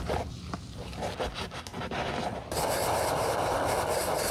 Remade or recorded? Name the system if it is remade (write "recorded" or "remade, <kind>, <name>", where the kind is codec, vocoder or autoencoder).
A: recorded